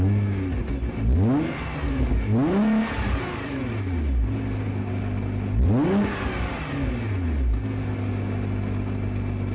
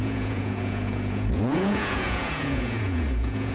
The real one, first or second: first